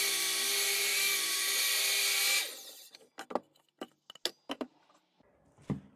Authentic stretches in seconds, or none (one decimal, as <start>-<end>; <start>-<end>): 0.0-6.0